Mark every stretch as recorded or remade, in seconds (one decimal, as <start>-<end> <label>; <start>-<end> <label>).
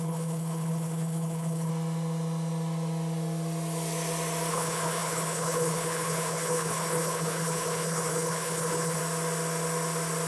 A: 0.0-1.7 remade; 1.7-4.5 recorded; 4.5-9.0 remade; 9.0-10.3 recorded